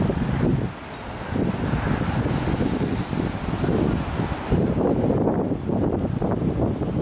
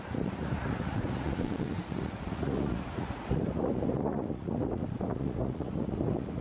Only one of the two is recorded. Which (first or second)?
first